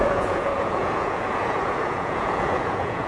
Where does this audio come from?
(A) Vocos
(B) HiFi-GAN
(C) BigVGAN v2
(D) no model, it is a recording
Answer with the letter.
A